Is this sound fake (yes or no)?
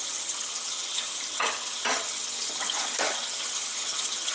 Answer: yes